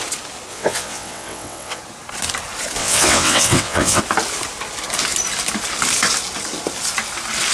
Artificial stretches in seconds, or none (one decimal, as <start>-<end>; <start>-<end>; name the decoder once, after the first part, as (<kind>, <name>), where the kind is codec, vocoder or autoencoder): 0.5-1.8 (vocoder, WaveNeXt); 2.8-4.0

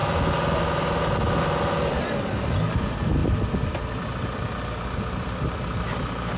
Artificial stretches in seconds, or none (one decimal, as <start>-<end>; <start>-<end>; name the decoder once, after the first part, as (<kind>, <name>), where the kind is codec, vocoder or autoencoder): none

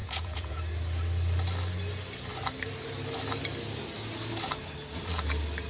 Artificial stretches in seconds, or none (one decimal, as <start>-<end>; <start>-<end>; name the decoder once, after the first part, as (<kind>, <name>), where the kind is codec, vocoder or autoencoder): 0.0-0.6 (vocoder, Vocos)